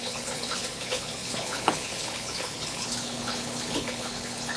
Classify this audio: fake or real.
fake